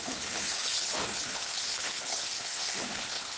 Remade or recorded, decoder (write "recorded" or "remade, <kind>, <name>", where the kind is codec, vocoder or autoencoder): remade, codec, HILCodec